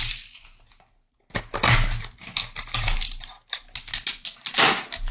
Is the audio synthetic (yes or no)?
no